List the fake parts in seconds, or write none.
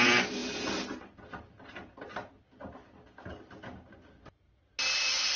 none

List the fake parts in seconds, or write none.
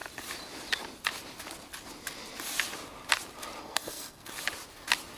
3.6-4.3 (codec, SNAC)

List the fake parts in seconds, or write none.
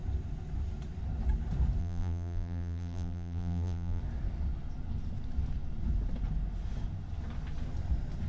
1.8-4.0 (vocoder, BigVGAN v2)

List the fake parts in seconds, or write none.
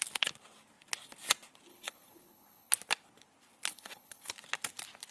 1.7-2.7 (codec, HILCodec); 3.7-4.3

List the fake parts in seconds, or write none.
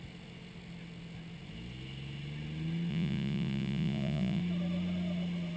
2.9-4.4 (vocoder, Vocos)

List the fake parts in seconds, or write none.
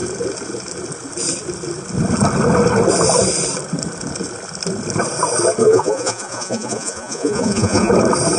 5.6-7.9 (vocoder, Vocos)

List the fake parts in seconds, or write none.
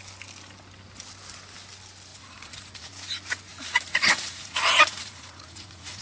2.1-2.9 (vocoder, Vocos); 3.5-6.0